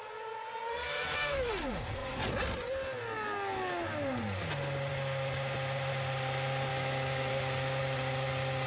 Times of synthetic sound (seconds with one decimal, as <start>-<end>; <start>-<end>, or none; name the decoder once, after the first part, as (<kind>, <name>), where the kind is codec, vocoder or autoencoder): 0.8-1.5 (autoencoder, DAC-VAE); 6.7-7.3